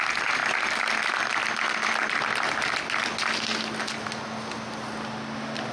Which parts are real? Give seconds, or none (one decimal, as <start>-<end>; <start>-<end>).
0.0-5.7